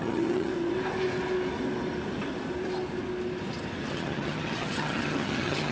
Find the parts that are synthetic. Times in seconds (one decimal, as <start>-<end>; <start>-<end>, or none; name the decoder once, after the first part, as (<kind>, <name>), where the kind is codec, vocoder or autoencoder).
0.0-0.5 (vocoder, HiFi-GAN); 3.9-5.7